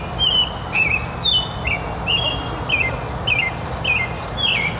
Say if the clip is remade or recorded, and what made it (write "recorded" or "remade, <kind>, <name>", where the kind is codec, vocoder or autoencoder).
recorded